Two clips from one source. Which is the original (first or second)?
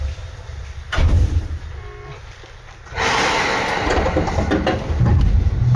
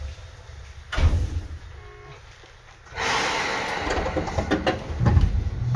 second